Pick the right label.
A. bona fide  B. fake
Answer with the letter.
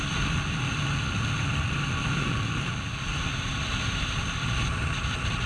A